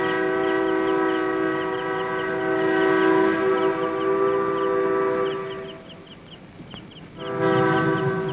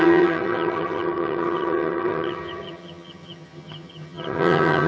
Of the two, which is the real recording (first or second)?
first